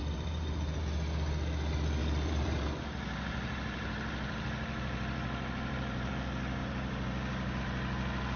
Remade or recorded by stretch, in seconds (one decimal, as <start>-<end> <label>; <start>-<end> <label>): 0.0-0.8 remade; 0.8-2.0 recorded; 2.0-6.1 remade; 6.1-6.6 recorded; 6.6-7.6 remade; 7.6-8.4 recorded